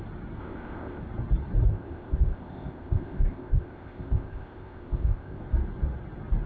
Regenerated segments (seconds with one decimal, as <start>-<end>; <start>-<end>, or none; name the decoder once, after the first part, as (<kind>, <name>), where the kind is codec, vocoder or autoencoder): 0.4-1.0 (codec, ZipCodec); 1.7-5.4